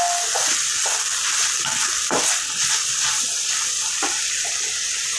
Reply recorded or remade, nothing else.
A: recorded